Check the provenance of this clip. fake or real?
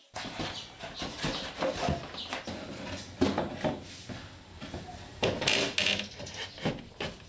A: real